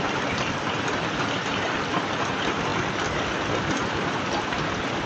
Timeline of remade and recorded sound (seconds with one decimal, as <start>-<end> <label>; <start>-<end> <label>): 0.0-5.1 recorded